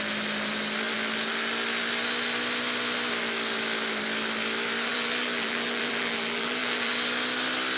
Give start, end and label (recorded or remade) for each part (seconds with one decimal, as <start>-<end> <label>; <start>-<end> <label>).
0.0-4.9 recorded; 4.9-6.9 remade; 6.9-7.8 recorded